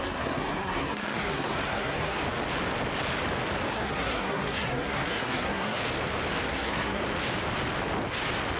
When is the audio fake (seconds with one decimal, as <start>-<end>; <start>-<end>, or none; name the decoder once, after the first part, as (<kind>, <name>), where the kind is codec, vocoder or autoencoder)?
0.0-2.2 (codec, SNAC); 3.7-5.8; 6.5-7.0